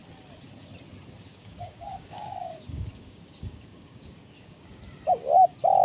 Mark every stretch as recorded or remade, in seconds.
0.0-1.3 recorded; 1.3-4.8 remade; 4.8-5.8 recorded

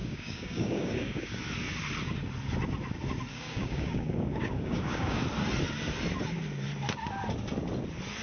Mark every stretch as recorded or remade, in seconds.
0.0-1.4 remade; 1.4-3.3 recorded; 3.3-5.2 remade; 5.2-8.2 recorded

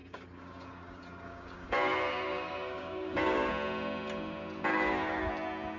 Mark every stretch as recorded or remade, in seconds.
0.0-3.5 remade; 3.5-4.7 recorded; 4.7-5.3 remade; 5.3-5.8 recorded